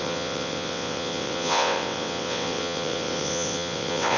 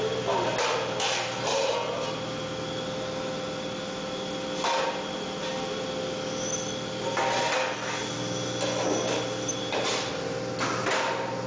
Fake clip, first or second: first